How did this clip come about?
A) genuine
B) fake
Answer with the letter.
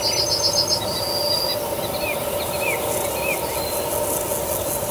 A